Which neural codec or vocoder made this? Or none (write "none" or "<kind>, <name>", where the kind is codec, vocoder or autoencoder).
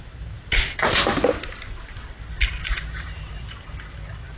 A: none